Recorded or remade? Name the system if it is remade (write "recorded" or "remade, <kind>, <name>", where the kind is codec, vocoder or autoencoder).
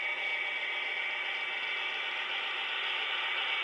recorded